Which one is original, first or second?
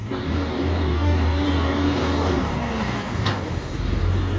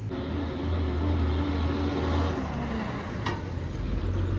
second